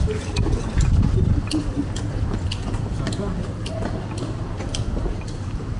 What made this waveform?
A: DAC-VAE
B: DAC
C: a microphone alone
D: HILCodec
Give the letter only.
C